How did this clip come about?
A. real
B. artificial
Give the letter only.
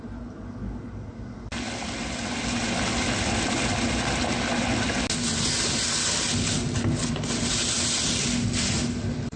A